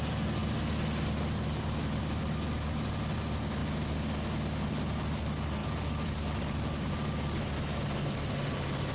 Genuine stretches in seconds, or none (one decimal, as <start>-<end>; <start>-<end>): 0.0-5.6; 6.9-8.9